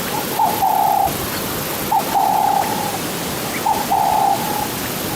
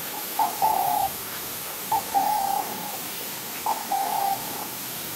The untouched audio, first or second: first